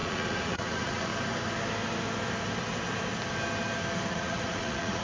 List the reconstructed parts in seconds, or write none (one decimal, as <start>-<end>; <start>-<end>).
0.0-1.1; 4.1-5.0